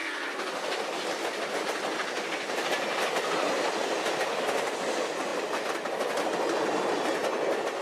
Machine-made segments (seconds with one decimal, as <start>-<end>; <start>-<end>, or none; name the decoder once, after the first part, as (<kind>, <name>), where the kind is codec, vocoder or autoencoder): none